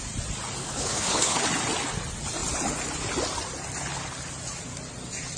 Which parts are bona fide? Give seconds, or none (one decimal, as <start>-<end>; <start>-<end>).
0.0-0.6; 1.4-5.4